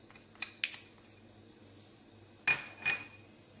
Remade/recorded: recorded